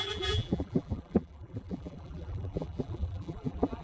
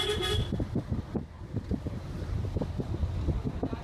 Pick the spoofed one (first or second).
first